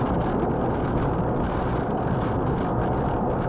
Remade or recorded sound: recorded